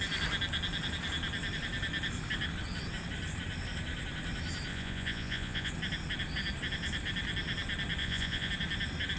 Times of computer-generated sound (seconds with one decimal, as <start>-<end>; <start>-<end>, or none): 4.7-5.7; 8.0-8.5